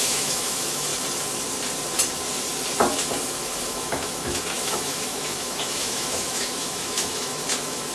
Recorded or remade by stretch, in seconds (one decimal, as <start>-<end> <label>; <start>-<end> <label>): 0.0-0.9 remade; 0.9-3.6 recorded; 3.6-7.9 remade